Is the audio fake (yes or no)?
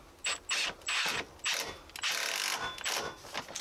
no